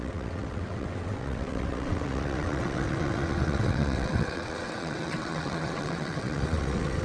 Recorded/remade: remade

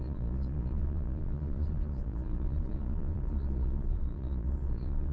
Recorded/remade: remade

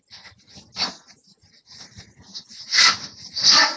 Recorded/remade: recorded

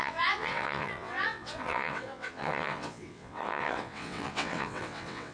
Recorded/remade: remade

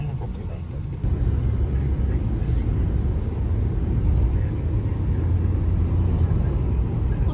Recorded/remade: recorded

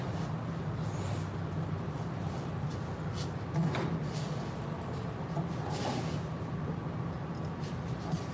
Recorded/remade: recorded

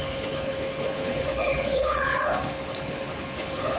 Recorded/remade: remade